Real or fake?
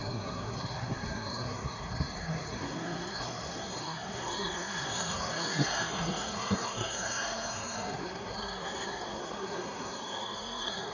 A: fake